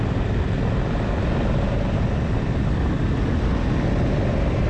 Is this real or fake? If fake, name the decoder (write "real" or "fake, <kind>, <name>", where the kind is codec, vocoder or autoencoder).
real